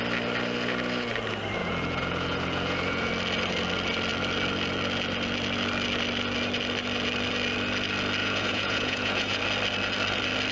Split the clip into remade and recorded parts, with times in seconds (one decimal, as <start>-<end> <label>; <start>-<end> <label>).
0.0-1.6 recorded; 1.6-3.1 remade; 3.1-8.2 recorded; 8.2-9.4 remade; 9.4-10.5 recorded